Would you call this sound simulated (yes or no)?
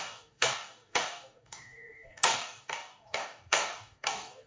yes